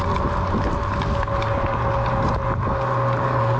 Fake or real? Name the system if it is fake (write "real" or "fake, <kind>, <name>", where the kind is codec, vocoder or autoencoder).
real